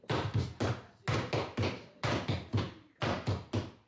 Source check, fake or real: real